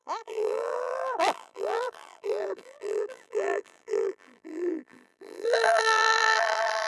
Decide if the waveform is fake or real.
fake